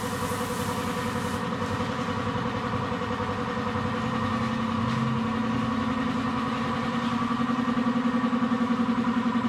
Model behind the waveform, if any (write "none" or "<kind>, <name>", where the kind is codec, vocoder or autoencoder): none